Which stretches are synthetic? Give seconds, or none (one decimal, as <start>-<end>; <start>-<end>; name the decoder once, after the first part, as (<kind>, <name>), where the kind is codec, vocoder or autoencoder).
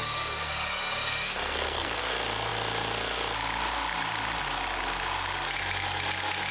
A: 0.0-2.0 (codec, SNAC)